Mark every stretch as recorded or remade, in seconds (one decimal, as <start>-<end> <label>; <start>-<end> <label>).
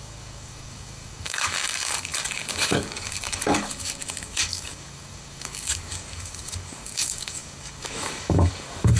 0.0-9.0 remade